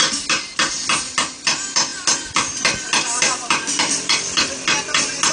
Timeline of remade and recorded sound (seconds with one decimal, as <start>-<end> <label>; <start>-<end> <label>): 0.0-5.3 recorded